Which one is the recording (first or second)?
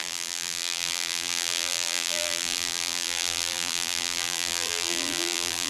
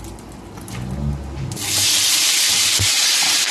second